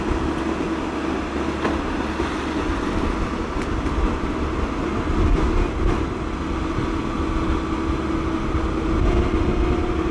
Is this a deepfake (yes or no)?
no